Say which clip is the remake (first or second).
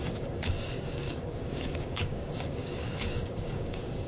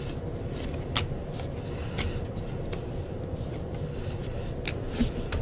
first